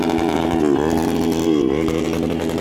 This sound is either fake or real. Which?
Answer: real